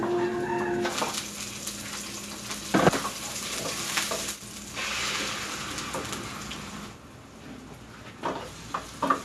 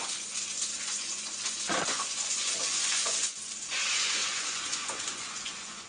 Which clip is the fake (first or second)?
second